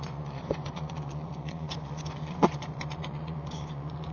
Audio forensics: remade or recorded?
remade